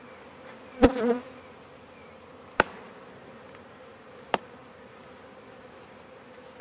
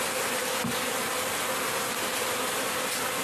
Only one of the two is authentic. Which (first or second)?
second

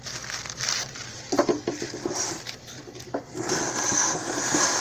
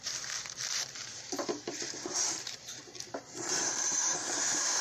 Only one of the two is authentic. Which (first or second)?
first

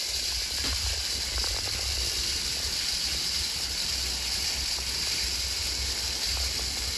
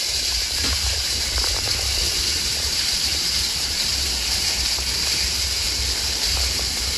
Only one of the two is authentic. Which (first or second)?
first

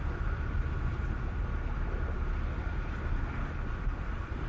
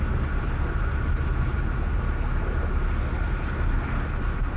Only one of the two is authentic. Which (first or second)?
second